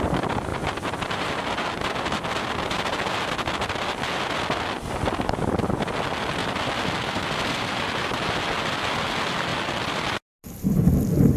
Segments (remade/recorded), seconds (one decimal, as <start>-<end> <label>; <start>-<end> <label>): 0.0-11.4 recorded

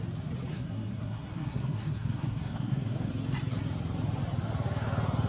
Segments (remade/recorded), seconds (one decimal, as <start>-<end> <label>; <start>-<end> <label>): 0.0-0.5 recorded; 0.5-3.1 remade; 3.1-5.3 recorded